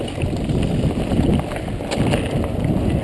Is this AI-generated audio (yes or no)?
no